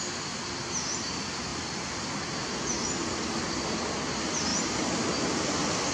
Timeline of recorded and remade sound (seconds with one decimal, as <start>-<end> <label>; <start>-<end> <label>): 0.0-5.9 recorded